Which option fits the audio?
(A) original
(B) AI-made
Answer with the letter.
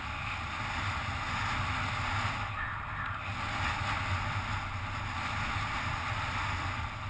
A